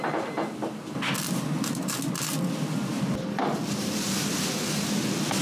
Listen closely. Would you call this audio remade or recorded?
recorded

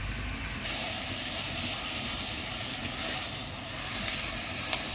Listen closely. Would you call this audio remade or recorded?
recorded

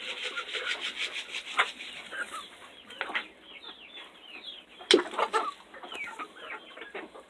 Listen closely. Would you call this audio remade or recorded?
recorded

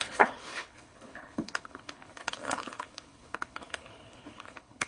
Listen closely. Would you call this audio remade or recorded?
remade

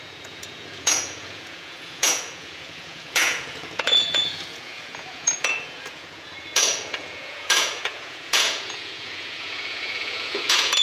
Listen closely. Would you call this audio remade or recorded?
remade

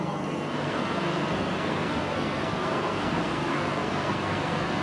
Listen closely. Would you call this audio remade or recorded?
remade